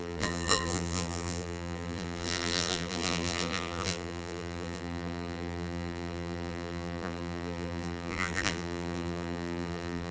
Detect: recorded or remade remade